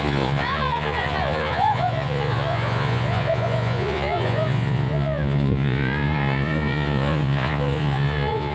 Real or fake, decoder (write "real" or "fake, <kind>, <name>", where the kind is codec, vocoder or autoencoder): fake, vocoder, Vocos